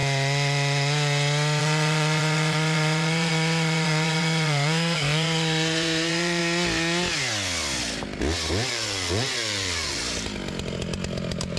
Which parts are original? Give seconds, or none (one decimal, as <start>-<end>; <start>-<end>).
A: 0.0-1.6; 6.4-8.7; 10.0-11.6